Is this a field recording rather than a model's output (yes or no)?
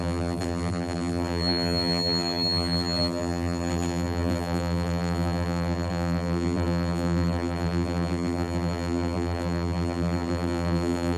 no